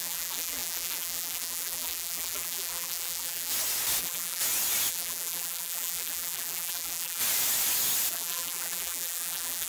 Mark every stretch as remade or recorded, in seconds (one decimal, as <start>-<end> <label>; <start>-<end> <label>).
0.0-3.5 remade; 3.5-4.0 recorded; 4.0-4.4 remade; 4.4-4.9 recorded; 4.9-7.2 remade; 7.2-8.1 recorded; 8.1-9.7 remade

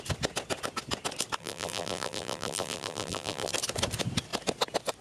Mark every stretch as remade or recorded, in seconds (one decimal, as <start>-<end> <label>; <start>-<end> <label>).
0.0-1.4 recorded; 1.4-3.5 remade; 3.5-5.0 recorded